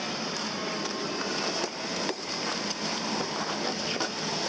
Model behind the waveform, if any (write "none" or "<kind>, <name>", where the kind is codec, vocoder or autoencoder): none